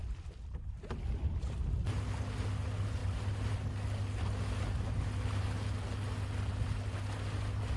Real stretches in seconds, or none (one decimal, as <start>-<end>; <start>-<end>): 0.0-7.8